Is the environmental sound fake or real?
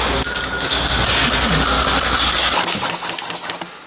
real